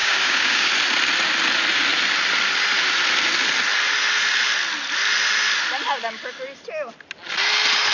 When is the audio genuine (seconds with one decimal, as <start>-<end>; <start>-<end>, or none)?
0.7-7.9